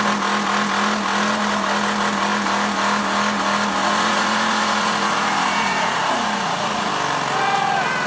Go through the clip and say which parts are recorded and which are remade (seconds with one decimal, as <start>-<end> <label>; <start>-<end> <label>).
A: 0.0-3.8 recorded; 3.8-6.9 remade; 6.9-8.1 recorded